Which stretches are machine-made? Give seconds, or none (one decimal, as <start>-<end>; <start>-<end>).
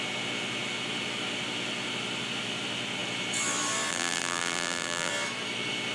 3.9-5.1